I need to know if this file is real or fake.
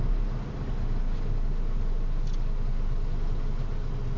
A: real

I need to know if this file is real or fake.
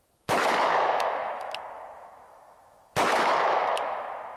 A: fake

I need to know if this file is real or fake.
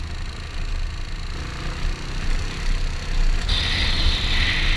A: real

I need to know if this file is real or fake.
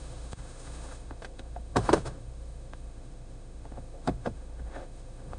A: fake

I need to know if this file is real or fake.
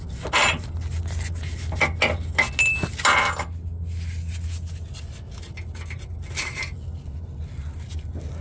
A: real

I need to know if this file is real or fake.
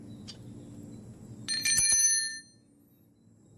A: real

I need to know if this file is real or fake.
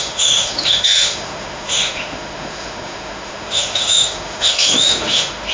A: fake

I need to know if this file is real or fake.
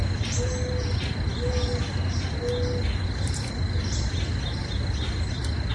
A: real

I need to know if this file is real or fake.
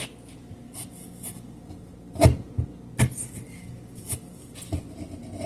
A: real